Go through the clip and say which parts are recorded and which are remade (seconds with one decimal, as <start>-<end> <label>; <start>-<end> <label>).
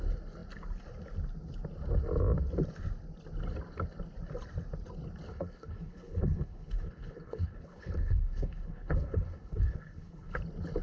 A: 0.0-5.3 recorded; 5.3-10.4 remade; 10.4-10.8 recorded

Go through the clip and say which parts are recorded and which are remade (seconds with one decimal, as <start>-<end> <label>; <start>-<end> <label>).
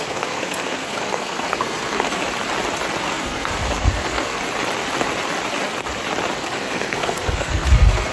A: 0.0-2.2 remade; 2.2-3.0 recorded; 3.0-4.4 remade; 4.4-6.4 recorded; 6.4-8.1 remade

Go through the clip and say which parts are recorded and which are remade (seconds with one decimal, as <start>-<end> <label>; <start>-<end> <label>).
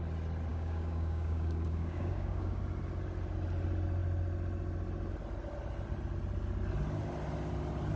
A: 0.0-0.5 recorded; 0.5-2.6 remade; 2.6-8.0 recorded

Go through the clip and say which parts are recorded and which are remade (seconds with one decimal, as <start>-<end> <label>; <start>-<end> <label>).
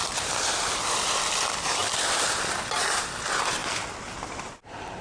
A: 0.0-1.2 remade; 1.2-1.8 recorded; 1.8-3.0 remade; 3.0-3.6 recorded; 3.6-4.3 remade; 4.3-5.0 recorded